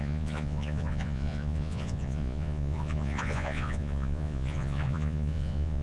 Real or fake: fake